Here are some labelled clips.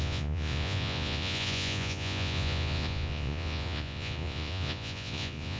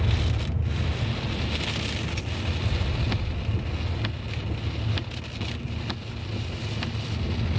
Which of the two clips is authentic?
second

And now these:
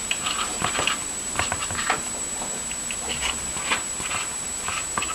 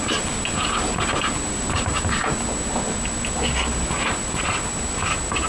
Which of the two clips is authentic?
second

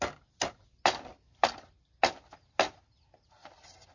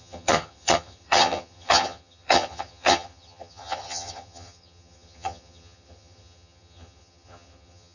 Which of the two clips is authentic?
first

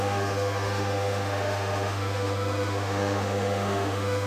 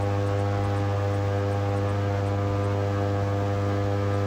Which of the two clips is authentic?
second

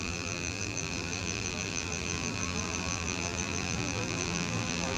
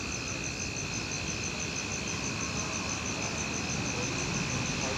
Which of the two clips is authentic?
second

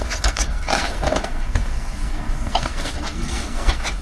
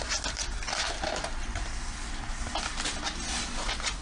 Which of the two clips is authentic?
second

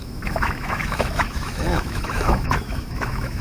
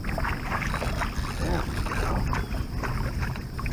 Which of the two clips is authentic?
second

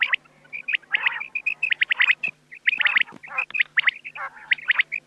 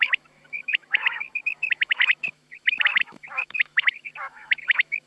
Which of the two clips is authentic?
first